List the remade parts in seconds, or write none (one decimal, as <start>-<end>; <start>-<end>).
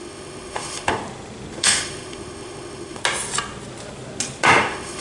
0.0-1.0; 1.6-3.0; 4.6-5.0